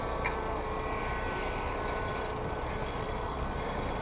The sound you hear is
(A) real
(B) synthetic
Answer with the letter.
A